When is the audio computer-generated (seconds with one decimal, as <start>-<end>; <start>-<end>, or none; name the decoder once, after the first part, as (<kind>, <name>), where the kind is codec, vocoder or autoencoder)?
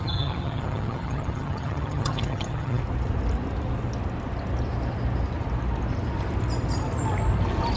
0.0-2.8 (vocoder, HiFi-GAN)